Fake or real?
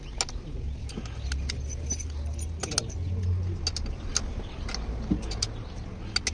real